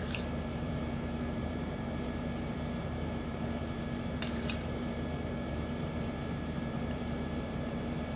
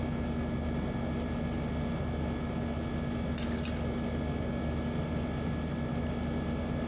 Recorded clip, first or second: second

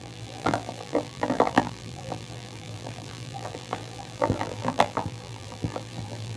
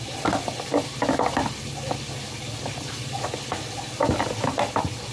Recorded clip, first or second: second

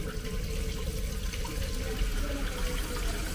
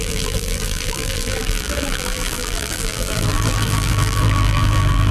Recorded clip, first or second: first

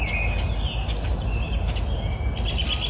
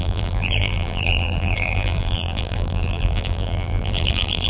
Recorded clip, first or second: first